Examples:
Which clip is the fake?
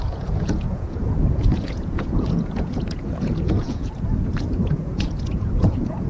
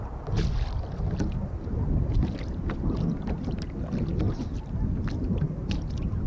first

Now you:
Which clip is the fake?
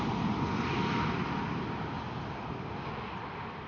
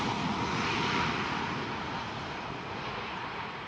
second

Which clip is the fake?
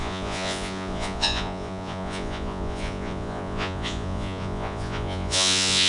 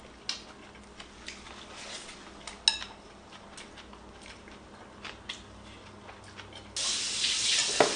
first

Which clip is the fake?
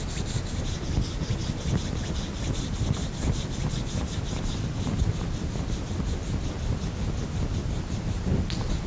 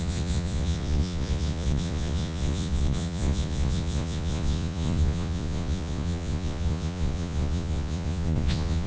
second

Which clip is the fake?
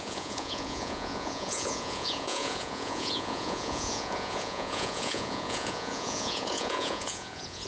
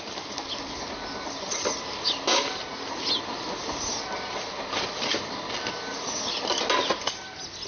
first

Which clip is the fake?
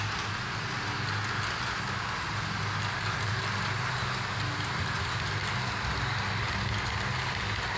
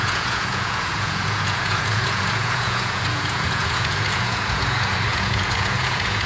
second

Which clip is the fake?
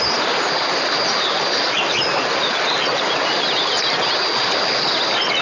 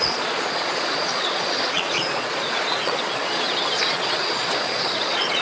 second